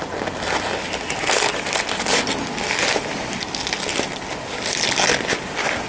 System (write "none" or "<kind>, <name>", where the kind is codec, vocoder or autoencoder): none